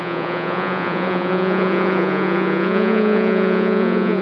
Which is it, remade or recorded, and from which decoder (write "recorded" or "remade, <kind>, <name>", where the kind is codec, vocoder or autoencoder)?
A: remade, vocoder, Vocos